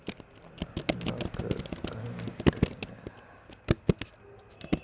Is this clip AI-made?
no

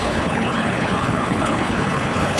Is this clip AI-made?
yes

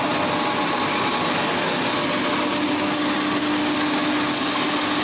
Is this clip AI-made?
no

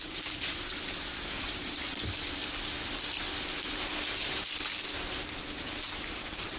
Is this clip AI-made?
no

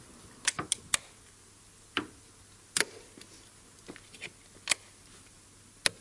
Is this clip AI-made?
no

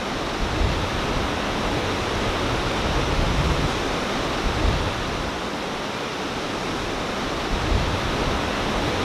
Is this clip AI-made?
no